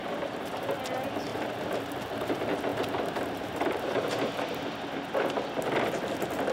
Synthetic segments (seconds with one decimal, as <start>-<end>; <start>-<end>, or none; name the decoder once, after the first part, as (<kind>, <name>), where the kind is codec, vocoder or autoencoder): 0.0-0.7 (vocoder, BigVGAN v2); 2.7-4.4